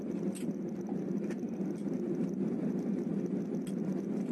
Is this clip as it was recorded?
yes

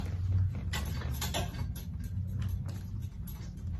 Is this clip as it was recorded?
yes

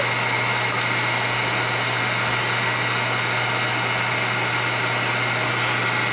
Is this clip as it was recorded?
yes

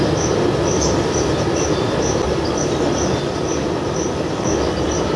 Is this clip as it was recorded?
yes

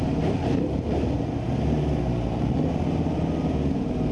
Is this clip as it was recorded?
yes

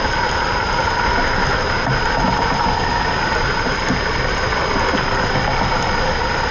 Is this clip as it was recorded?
yes